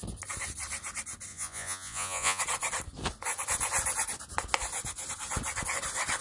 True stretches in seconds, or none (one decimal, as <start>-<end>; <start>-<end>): 0.0-1.3; 2.4-6.2